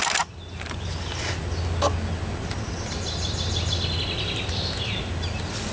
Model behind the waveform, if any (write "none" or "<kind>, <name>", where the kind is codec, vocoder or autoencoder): none